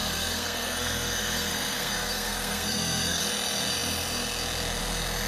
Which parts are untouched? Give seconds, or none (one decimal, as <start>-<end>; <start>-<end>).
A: 3.2-5.3